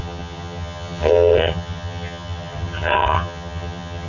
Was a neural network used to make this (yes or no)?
yes